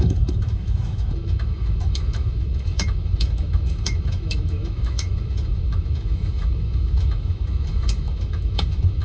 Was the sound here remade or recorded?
remade